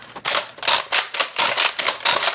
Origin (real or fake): real